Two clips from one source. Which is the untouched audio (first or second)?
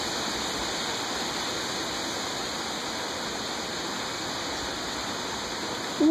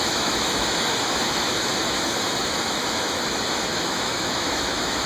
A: first